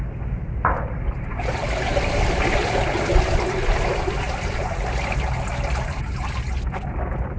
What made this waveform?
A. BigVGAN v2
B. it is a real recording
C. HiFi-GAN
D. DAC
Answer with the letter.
B